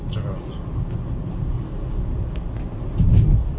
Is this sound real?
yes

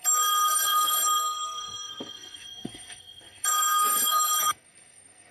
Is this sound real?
no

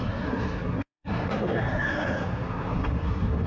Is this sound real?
no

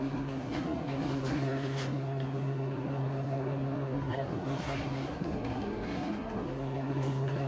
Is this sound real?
no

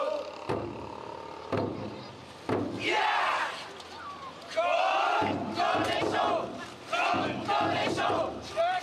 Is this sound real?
yes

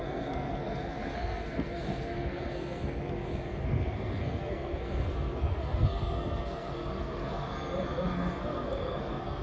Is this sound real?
no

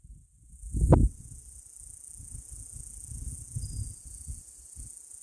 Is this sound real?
yes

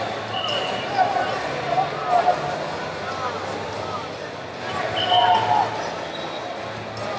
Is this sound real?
yes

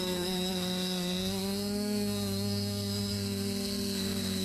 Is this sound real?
no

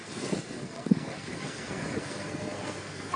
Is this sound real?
no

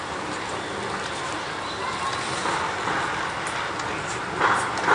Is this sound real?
yes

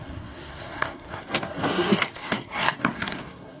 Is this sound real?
no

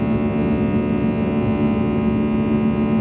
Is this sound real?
yes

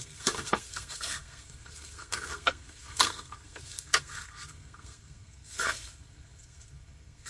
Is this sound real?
no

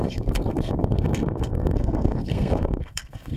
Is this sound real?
no